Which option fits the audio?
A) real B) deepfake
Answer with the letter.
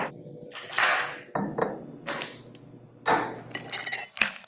A